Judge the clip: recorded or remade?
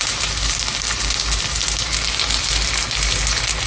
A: recorded